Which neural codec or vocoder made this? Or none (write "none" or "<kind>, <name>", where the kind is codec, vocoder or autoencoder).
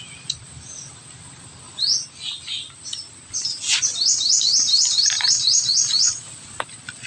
none